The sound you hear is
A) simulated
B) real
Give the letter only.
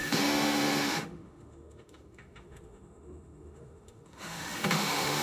A